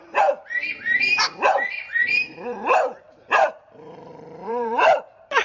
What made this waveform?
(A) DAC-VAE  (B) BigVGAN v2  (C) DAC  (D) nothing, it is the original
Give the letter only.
B